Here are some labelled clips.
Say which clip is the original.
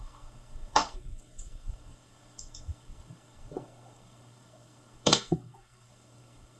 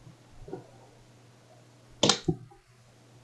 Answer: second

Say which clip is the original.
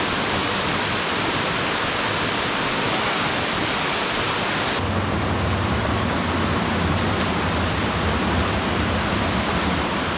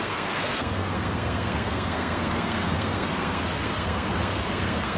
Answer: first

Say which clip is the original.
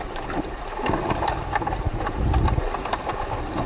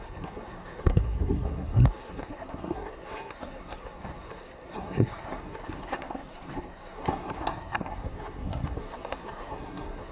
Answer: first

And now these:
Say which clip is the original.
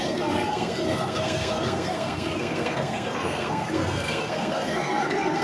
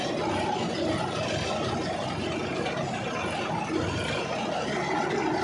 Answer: second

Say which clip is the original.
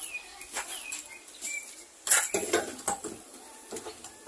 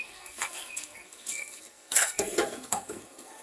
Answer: first